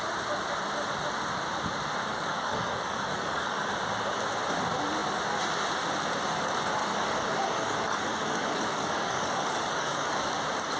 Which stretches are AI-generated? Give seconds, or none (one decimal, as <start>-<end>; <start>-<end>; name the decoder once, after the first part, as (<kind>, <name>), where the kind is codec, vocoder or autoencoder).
2.1-3.7 (codec, DAC); 6.8-10.3